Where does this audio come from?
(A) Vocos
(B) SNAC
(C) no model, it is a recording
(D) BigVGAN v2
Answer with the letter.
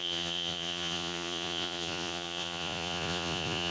A